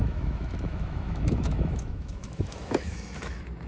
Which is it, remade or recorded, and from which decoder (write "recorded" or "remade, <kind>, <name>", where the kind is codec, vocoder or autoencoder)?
remade, autoencoder, DAC-VAE